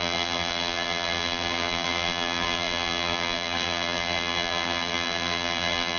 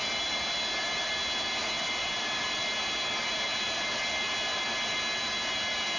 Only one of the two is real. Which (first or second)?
second